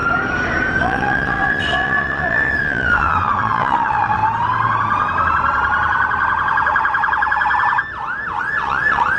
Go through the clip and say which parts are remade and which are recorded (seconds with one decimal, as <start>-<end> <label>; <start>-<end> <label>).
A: 0.0-0.8 recorded; 0.8-4.2 remade; 4.2-8.4 recorded; 8.4-9.2 remade